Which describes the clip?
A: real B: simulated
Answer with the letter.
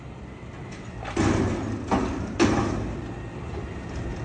A